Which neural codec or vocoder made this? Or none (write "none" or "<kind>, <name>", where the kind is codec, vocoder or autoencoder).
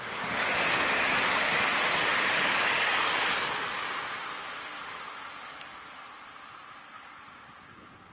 none